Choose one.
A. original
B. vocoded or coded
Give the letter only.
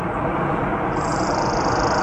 B